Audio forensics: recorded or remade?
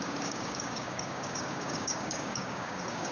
remade